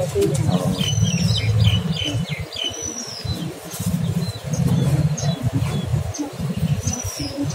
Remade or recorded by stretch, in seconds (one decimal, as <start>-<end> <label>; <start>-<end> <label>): 0.0-7.5 recorded